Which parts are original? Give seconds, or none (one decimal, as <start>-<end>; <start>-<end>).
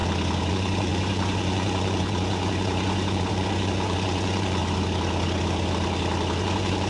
0.0-0.5; 4.6-6.4